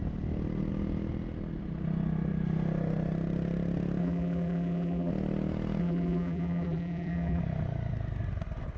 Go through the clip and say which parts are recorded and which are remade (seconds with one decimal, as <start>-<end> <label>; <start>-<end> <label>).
0.0-4.0 recorded; 4.0-5.1 remade; 5.1-5.8 recorded; 5.8-7.4 remade; 7.4-8.8 recorded